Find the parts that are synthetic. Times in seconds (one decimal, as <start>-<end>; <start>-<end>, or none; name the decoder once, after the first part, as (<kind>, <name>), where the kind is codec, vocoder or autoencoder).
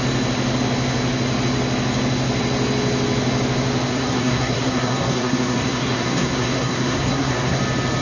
3.9-7.6 (codec, SNAC)